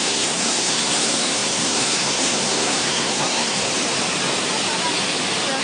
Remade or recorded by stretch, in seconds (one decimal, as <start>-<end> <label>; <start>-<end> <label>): 0.0-3.7 remade; 3.7-5.6 recorded